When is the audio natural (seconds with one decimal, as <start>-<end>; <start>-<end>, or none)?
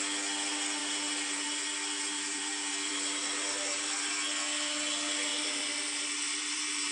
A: 0.0-0.8; 4.1-5.3